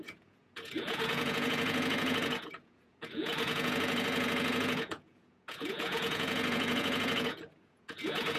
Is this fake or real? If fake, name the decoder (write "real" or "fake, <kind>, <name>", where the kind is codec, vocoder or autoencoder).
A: fake, vocoder, Vocos